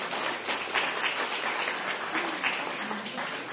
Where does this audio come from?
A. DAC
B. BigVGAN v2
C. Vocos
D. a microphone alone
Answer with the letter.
D